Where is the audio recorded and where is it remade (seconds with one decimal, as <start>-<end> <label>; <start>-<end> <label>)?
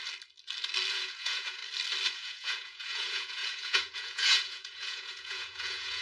0.0-0.9 recorded; 0.9-1.6 remade; 1.6-2.1 recorded; 2.1-6.0 remade